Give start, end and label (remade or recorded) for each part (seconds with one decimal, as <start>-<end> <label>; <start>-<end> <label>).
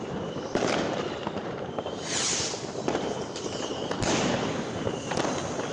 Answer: 0.0-1.4 recorded; 1.4-2.1 remade; 2.1-3.7 recorded; 3.7-5.3 remade; 5.3-5.7 recorded